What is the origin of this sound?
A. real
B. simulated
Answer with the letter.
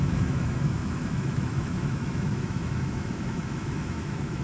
B